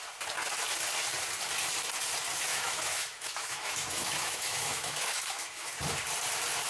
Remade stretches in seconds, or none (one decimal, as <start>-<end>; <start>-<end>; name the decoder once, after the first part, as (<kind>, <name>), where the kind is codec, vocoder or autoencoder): 2.5-5.7 (autoencoder, DAC-VAE)